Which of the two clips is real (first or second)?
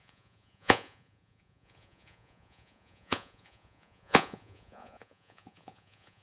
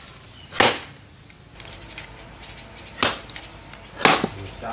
second